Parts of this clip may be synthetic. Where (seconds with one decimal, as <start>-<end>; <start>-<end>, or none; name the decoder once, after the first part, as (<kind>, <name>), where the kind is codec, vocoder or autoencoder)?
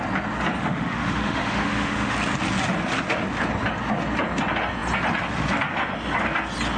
0.6-2.1 (autoencoder, DAC-VAE)